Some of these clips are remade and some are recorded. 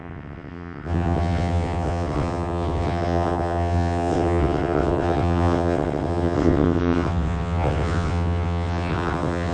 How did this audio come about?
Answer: remade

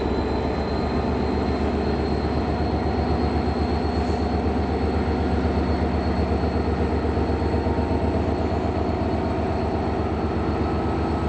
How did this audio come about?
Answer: recorded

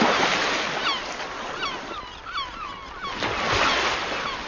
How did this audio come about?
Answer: recorded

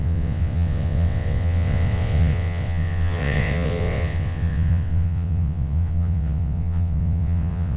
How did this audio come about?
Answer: remade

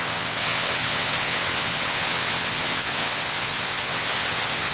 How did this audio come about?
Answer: remade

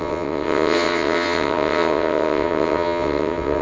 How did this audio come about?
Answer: remade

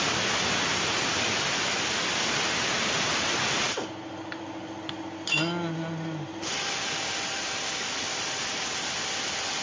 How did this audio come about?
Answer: recorded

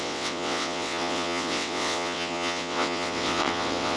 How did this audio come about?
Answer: remade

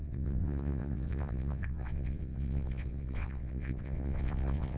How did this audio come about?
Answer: remade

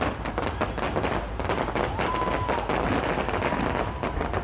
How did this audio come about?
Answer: recorded